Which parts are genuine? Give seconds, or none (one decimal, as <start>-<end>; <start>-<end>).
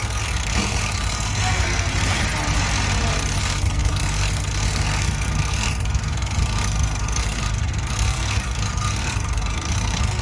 2.2-3.4